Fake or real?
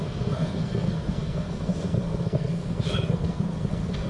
fake